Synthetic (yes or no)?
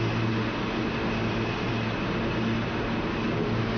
no